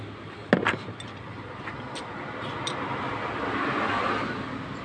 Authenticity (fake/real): real